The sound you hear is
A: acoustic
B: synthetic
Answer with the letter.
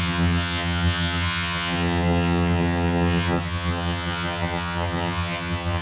B